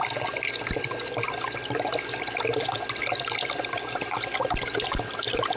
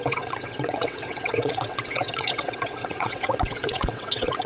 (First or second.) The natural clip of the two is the first